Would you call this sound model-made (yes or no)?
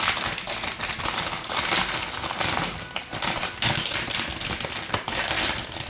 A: no